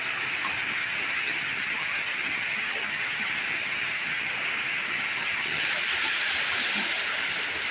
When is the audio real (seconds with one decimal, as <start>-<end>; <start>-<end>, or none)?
0.0-0.8; 4.3-4.7; 5.7-7.7

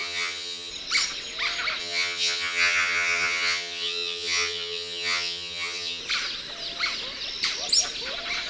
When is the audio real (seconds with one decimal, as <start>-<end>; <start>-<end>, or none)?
0.7-1.8; 6.0-8.5

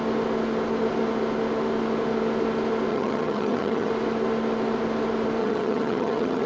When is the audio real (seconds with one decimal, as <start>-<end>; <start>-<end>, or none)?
0.0-2.9; 3.9-5.4

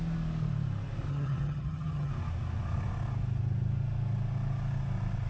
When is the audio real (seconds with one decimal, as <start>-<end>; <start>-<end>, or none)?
0.0-1.1; 2.1-5.3

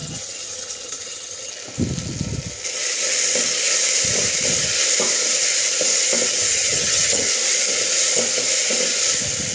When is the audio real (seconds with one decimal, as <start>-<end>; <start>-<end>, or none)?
1.5-6.5; 7.3-9.5

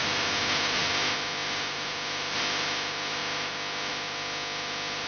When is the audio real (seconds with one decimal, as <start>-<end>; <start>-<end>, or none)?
0.0-5.1

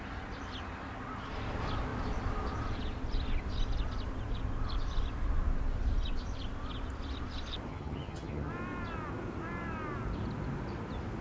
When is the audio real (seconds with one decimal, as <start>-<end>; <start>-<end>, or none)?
0.0-7.7; 8.5-11.2